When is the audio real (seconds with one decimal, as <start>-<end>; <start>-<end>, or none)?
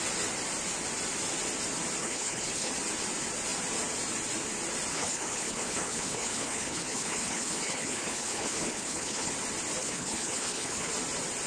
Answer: 0.0-2.0; 2.7-4.9; 9.3-9.8; 10.9-11.5